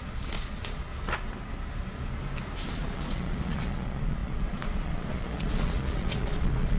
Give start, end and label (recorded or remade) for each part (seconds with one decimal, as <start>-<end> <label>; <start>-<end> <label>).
0.0-0.9 remade; 0.9-2.7 recorded; 2.7-6.8 remade

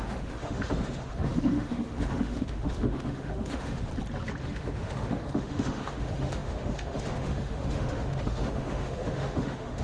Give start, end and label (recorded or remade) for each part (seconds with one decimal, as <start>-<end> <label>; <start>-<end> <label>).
0.0-3.9 remade; 3.9-4.4 recorded; 4.4-9.8 remade